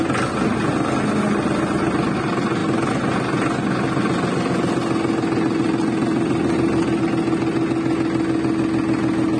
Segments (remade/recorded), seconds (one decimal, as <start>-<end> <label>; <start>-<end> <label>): 0.0-9.4 recorded